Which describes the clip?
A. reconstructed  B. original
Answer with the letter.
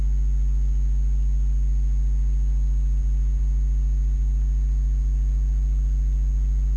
B